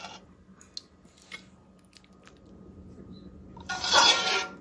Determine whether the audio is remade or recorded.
recorded